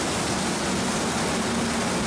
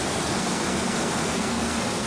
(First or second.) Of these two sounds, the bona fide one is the first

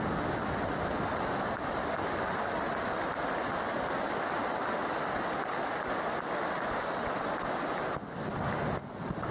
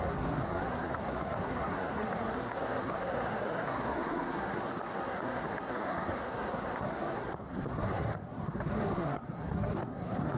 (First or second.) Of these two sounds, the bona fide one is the first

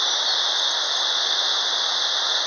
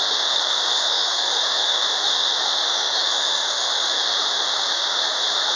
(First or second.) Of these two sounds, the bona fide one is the first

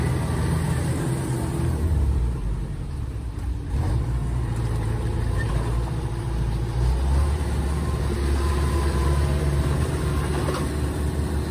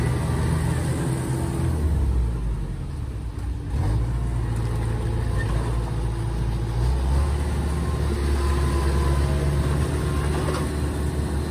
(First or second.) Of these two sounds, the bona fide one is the second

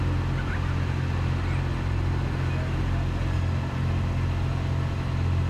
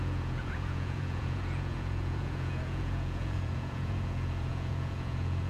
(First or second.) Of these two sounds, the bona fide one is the first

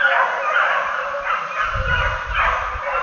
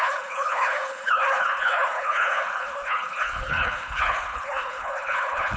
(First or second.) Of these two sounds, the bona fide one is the first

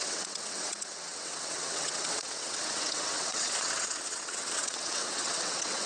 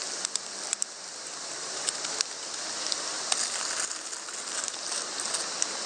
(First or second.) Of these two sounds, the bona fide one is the second